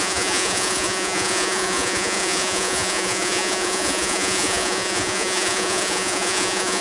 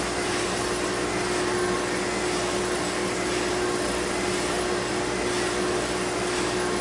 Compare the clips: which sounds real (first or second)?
second